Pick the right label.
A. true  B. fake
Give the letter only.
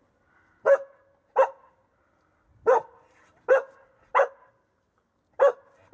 A